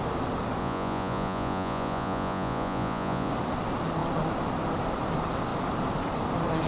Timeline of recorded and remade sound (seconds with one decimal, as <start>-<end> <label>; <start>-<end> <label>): 0.0-0.6 recorded; 0.6-3.3 remade; 3.3-6.7 recorded